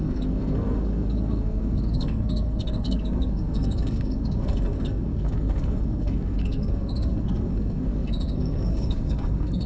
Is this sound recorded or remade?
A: remade